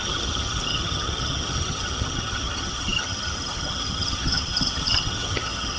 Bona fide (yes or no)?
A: no